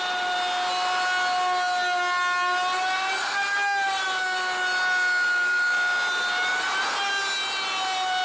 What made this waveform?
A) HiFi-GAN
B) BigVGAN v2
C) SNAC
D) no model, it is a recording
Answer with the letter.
D